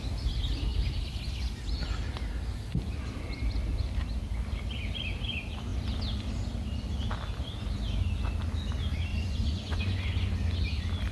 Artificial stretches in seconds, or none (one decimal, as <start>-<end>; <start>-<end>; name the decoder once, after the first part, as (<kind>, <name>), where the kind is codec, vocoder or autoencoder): 9.1-10.3 (vocoder, Vocos)